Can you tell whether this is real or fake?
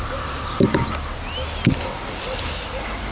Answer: real